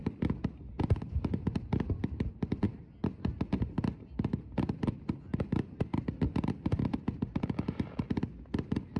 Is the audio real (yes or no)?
yes